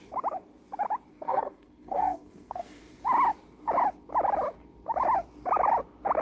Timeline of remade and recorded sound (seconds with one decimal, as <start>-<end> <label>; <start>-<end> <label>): 0.0-1.1 recorded; 1.1-3.0 remade; 3.0-6.2 recorded